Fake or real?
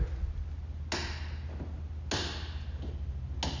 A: real